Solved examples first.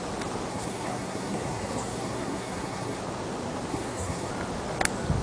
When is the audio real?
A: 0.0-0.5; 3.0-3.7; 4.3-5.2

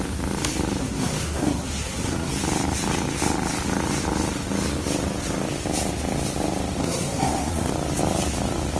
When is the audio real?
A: 0.0-0.8; 2.3-6.8; 7.7-8.8

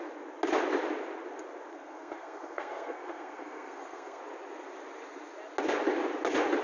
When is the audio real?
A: 0.0-1.7; 4.2-6.6

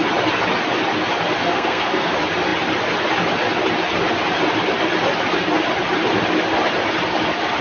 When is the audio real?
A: 0.0-1.4; 2.1-7.6

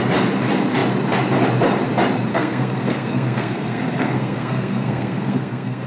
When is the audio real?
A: 0.0-2.3

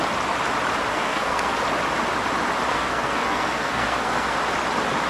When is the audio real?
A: 0.0-0.9; 1.5-2.7; 4.4-5.1